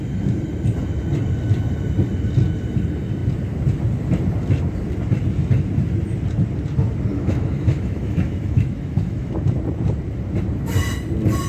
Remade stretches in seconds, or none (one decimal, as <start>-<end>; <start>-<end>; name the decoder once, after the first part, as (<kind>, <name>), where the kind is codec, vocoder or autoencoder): 7.1-9.3 (autoencoder, DAC-VAE)